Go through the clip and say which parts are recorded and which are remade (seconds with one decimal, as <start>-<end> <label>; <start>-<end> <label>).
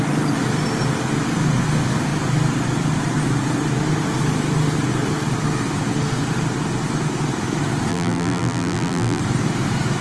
0.0-7.9 recorded; 7.9-9.2 remade; 9.2-10.0 recorded